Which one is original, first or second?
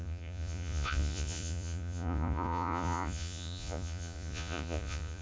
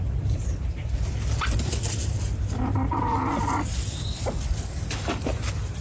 second